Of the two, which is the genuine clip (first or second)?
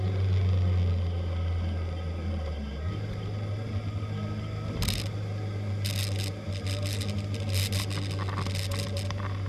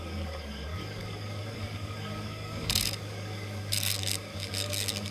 first